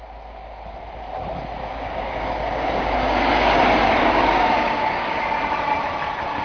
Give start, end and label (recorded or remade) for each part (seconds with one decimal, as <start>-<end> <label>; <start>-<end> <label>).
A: 0.0-1.6 recorded; 1.6-5.2 remade; 5.2-6.4 recorded

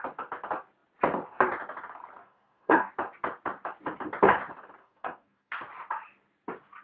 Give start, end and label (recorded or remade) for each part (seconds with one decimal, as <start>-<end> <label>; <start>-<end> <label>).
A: 0.0-2.2 recorded; 2.2-2.9 remade; 2.9-4.8 recorded; 4.8-5.5 remade; 5.5-6.8 recorded

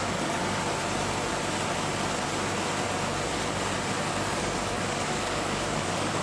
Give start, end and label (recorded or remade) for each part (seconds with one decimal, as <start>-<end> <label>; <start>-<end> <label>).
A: 0.0-0.4 remade; 0.4-4.1 recorded; 4.1-6.2 remade

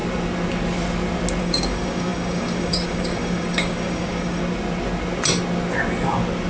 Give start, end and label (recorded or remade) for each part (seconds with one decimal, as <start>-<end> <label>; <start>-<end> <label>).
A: 0.0-1.4 recorded; 1.4-4.4 remade; 4.4-6.5 recorded

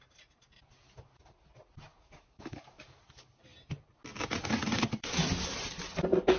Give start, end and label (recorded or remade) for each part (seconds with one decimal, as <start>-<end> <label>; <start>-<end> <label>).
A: 0.0-1.9 recorded; 1.9-3.0 remade; 3.0-6.4 recorded

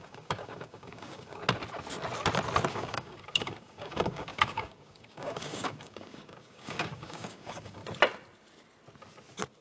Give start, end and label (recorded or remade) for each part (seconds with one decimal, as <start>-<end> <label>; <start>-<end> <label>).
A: 0.0-1.4 remade; 1.4-2.7 recorded; 2.7-7.8 remade; 7.8-9.6 recorded

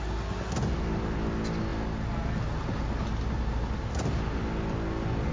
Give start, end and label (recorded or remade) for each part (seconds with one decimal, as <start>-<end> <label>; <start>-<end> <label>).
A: 0.0-5.3 recorded

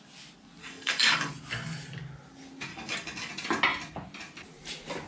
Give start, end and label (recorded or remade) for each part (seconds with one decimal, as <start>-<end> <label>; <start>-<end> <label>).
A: 0.0-0.6 recorded; 0.6-1.3 remade; 1.3-2.7 recorded; 2.7-3.3 remade; 3.3-5.1 recorded